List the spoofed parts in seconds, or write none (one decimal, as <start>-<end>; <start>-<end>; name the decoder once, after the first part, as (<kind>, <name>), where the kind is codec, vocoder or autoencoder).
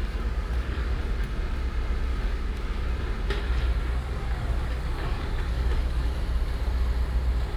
0.0-1.0 (codec, DAC); 2.1-2.9; 4.0-6.2